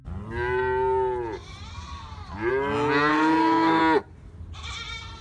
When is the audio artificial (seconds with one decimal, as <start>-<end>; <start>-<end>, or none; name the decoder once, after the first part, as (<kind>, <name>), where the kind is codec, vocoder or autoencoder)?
3.1-3.8 (codec, SNAC)